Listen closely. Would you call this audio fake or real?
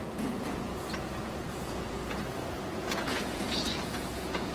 fake